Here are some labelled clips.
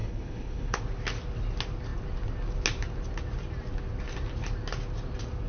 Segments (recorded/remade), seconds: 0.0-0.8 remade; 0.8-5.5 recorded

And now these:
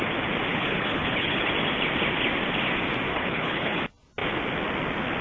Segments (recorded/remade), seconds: 0.0-0.5 recorded; 0.5-1.5 remade; 1.5-3.1 recorded; 3.1-3.8 remade; 3.8-5.2 recorded